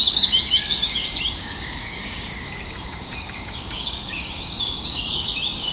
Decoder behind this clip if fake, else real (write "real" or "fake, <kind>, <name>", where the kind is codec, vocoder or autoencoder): fake, codec, DAC